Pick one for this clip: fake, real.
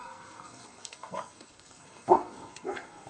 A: fake